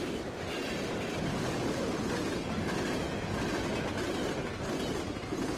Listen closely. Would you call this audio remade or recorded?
recorded